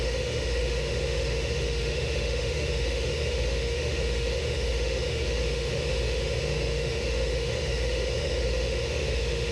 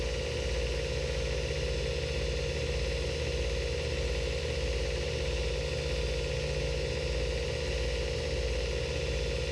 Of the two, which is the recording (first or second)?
second